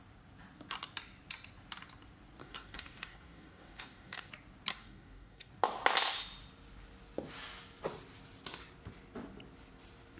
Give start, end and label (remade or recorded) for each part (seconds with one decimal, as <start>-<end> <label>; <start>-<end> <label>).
0.0-2.4 recorded; 2.4-4.3 remade; 4.3-4.7 recorded; 4.7-5.5 remade; 5.5-10.2 recorded